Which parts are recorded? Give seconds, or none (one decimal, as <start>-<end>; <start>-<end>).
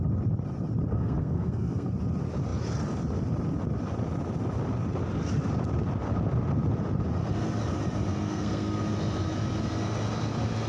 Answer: 0.0-0.9; 1.9-8.1; 8.8-10.7